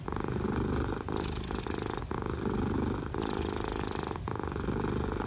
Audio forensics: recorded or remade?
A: remade